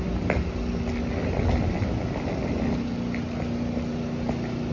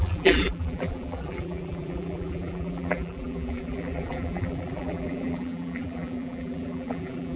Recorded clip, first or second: first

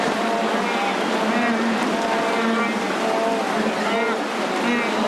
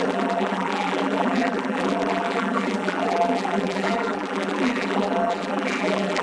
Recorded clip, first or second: first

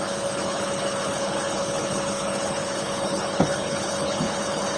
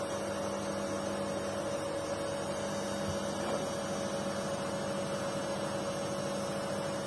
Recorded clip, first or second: second